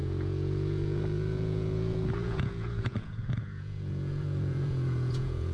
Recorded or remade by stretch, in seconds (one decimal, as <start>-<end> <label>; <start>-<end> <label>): 0.0-5.5 remade